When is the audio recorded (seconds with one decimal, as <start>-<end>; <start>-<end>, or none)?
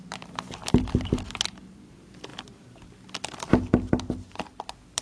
0.0-5.0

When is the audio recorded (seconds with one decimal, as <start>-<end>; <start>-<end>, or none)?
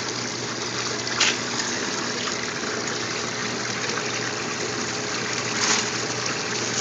0.0-6.8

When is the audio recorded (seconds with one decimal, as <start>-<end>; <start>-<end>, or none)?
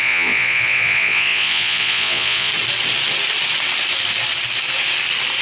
2.5-5.4